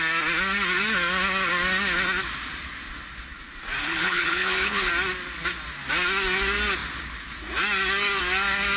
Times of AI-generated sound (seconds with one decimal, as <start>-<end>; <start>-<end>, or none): 3.8-4.9